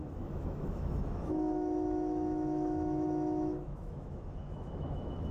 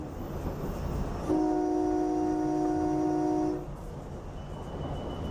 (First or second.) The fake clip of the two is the first